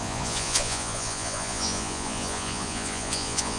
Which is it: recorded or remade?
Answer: remade